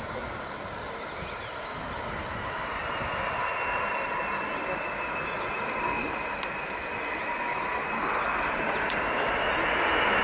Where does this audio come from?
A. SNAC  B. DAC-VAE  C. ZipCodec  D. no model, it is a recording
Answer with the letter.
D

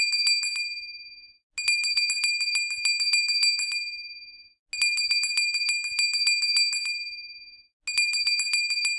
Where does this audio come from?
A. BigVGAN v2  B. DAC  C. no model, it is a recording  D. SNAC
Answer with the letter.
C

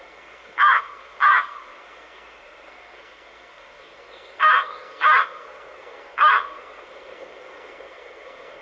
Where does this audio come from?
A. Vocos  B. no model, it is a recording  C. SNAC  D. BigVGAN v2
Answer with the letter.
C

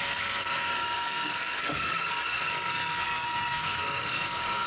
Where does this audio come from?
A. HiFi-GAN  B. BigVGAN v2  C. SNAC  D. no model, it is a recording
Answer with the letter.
C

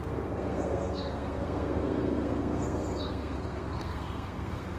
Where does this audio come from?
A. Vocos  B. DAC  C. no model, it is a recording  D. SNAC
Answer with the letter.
D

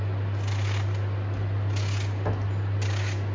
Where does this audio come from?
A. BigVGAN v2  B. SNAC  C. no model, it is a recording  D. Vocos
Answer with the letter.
C